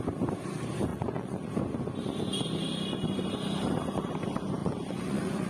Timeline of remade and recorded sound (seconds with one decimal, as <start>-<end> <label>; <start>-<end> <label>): 0.0-0.9 recorded; 0.9-1.5 remade; 1.5-4.6 recorded; 4.6-5.5 remade